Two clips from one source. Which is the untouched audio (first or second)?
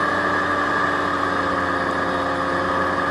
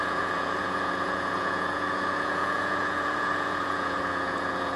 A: first